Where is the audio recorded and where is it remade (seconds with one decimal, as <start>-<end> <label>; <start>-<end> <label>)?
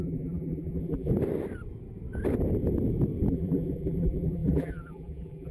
0.0-1.1 remade; 1.1-3.3 recorded; 3.3-5.5 remade